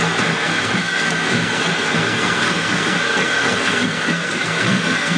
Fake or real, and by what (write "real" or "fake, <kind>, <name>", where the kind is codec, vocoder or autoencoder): fake, codec, SNAC